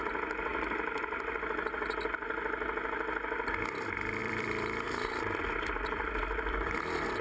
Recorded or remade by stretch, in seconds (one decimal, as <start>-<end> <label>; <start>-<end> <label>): 0.0-0.5 recorded; 0.5-1.4 remade; 1.4-4.2 recorded; 4.2-7.2 remade